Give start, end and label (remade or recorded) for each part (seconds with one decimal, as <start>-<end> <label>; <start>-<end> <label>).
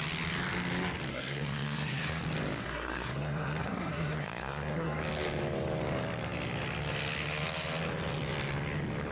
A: 0.0-1.1 recorded; 1.1-2.2 remade; 2.2-2.6 recorded; 2.6-5.0 remade; 5.0-9.1 recorded